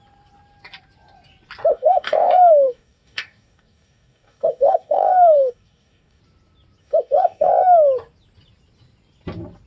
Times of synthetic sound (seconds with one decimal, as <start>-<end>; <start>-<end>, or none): 1.7-6.2; 6.8-7.5